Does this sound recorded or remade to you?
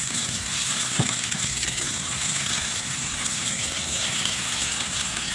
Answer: remade